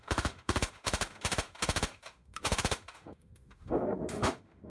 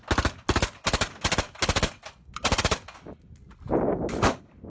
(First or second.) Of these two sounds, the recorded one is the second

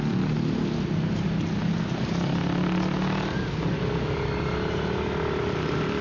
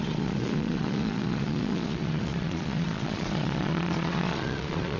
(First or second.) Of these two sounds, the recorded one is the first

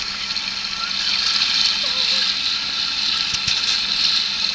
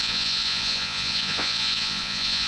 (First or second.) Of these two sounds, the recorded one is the first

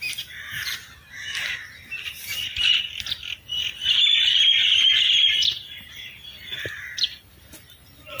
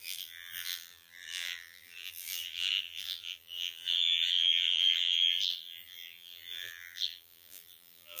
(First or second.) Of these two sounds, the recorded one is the first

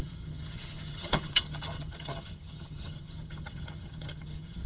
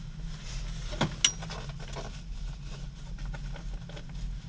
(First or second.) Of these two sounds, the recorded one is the second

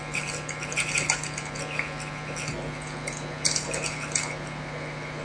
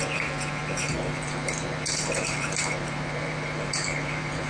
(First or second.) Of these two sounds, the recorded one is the first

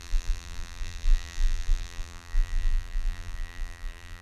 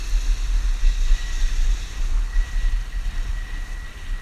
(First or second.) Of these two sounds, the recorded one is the second